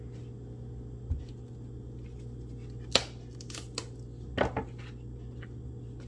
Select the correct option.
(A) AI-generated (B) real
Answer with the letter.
B